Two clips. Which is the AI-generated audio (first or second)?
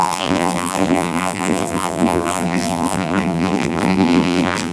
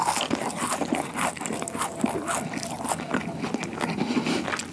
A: first